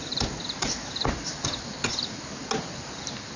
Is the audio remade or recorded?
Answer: recorded